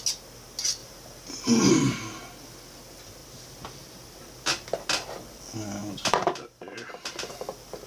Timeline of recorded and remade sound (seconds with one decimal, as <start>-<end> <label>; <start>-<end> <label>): 0.0-0.8 recorded; 0.8-1.7 remade; 1.7-3.2 recorded; 3.2-4.4 remade; 4.4-5.8 recorded; 5.8-6.9 remade; 6.9-7.9 recorded